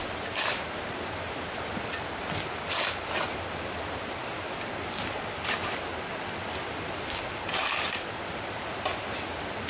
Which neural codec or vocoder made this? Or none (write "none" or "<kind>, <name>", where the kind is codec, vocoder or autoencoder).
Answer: none